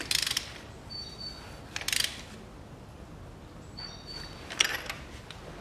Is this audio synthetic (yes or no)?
no